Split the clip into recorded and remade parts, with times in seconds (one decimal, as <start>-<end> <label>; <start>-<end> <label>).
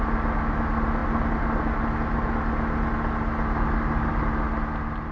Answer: 0.0-5.1 recorded